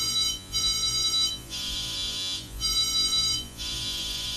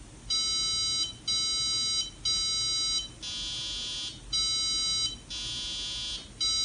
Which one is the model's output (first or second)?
first